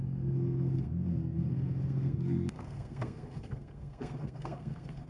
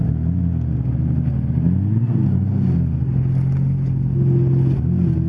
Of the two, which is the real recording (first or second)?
second